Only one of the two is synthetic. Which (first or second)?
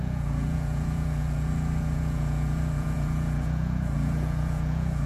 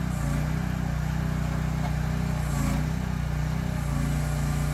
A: first